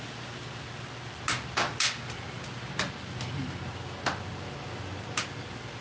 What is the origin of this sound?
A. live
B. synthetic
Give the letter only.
A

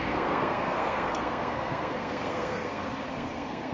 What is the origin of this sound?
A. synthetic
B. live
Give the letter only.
A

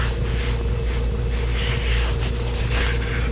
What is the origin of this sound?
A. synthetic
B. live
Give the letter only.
B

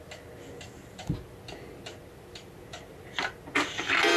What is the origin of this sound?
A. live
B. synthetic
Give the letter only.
A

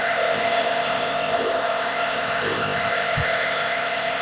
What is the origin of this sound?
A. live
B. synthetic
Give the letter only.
B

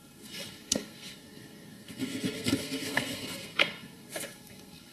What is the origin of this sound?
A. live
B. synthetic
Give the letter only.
B